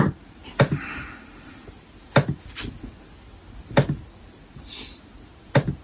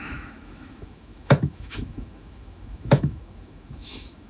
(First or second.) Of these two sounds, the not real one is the second